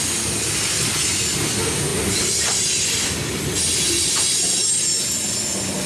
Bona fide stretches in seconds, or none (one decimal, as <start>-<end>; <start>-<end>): 0.0-5.9